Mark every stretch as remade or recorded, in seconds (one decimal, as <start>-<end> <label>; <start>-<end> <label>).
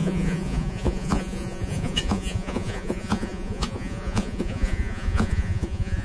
0.0-6.0 remade